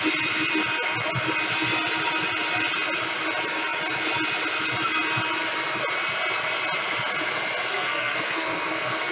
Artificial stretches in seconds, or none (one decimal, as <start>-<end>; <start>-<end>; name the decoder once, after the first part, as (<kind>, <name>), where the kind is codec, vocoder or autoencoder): 7.7-9.1 (codec, SNAC)